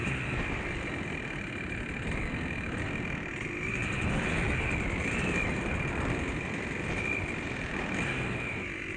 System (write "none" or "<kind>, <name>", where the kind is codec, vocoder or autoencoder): vocoder, BigVGAN v2